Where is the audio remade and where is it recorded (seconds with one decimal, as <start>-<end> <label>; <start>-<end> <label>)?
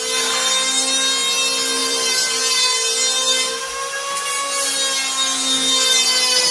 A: 0.0-1.8 recorded; 1.8-2.4 remade; 2.4-6.5 recorded